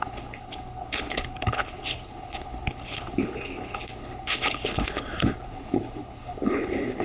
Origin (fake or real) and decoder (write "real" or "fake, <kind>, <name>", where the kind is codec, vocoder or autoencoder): fake, codec, HILCodec